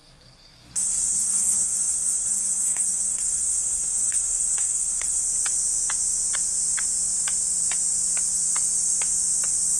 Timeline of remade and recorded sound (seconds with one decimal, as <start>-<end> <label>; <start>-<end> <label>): 0.0-5.2 remade; 5.2-9.8 recorded